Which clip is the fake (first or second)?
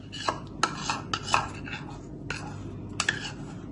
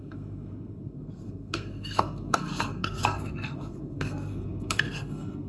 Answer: second